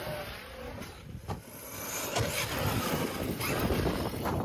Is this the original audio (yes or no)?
yes